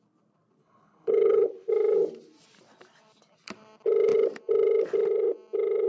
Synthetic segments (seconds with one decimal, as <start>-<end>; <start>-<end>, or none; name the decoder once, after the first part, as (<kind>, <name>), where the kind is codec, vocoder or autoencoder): 0.6-1.7 (codec, HILCodec)